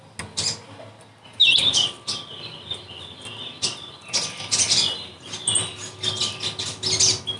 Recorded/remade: recorded